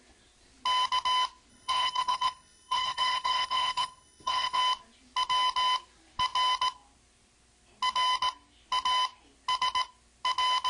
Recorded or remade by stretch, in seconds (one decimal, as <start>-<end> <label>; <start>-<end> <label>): 0.0-1.5 recorded; 1.5-4.6 remade; 4.6-10.7 recorded